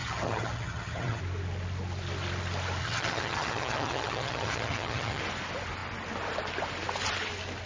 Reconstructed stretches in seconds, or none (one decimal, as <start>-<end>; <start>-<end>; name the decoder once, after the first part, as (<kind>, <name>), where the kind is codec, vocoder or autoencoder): 0.0-1.2 (vocoder, HiFi-GAN); 2.8-5.2